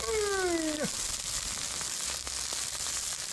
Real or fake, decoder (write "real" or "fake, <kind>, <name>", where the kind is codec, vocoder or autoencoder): real